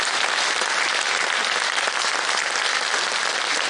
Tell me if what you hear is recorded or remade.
recorded